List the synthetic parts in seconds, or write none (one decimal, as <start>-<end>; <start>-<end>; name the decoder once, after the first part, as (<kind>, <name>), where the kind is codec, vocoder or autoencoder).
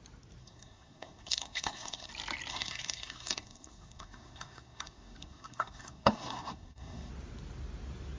0.4-2.1 (codec, SNAC); 2.5-7.1